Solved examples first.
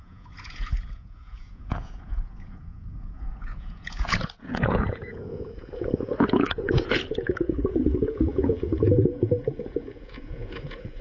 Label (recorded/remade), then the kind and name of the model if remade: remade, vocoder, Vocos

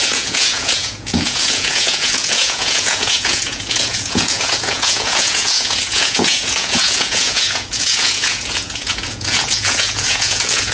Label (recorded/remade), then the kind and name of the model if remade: remade, vocoder, Vocos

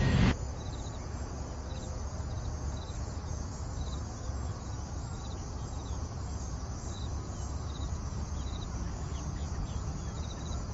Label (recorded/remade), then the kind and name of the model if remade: remade, vocoder, Vocos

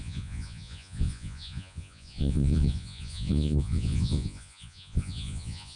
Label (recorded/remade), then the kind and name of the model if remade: remade, vocoder, Vocos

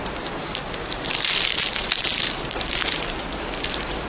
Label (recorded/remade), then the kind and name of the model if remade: recorded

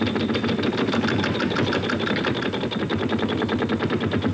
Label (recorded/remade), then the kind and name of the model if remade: recorded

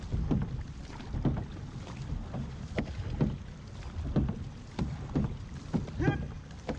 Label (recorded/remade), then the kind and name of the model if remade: recorded